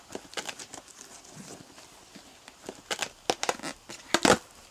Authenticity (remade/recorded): recorded